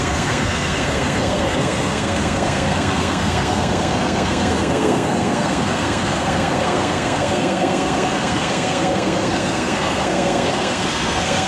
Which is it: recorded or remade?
remade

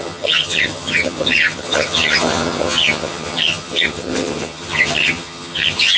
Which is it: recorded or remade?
remade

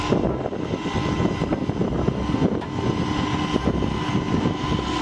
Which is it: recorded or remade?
recorded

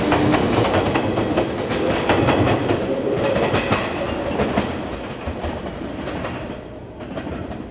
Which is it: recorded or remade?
recorded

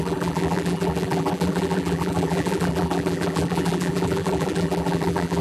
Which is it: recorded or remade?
remade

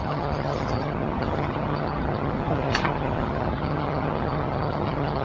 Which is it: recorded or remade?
remade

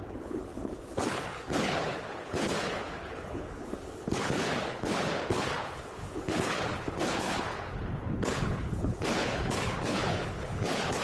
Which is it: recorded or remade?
remade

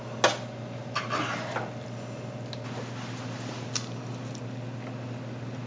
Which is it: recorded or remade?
recorded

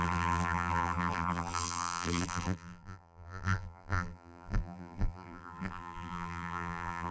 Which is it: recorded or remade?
remade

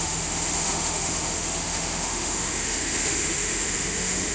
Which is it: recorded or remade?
remade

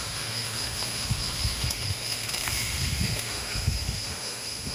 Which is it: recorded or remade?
remade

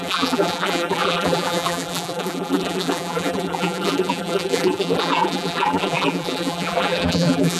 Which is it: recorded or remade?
remade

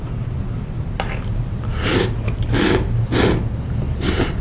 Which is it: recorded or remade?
recorded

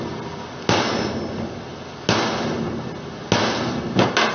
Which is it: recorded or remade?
recorded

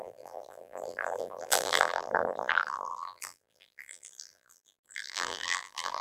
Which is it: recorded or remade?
remade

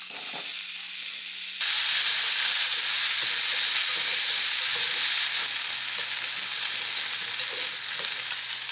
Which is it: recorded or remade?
recorded